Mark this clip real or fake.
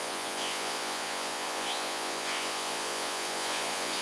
fake